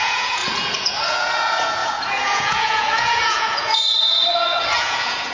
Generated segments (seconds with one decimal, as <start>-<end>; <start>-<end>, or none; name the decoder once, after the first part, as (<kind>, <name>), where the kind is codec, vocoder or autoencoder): 0.0-5.3 (vocoder, Vocos)